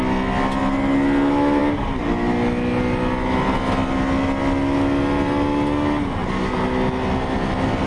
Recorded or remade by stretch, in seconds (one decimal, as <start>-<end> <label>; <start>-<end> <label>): 0.0-7.9 recorded

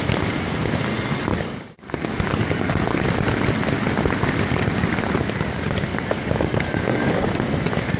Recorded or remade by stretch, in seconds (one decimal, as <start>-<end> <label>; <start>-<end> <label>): 0.0-1.3 recorded; 1.3-3.0 remade; 3.0-5.9 recorded; 5.9-7.3 remade; 7.3-8.0 recorded

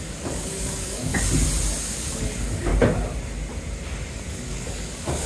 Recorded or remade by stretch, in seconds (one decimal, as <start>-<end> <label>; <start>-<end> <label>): 0.0-1.1 remade; 1.1-1.8 recorded; 1.8-2.7 remade; 2.7-4.3 recorded; 4.3-5.3 remade

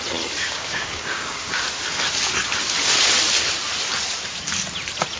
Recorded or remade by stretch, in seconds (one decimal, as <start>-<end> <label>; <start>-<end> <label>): 0.0-0.4 recorded; 0.4-1.6 remade; 1.6-5.2 recorded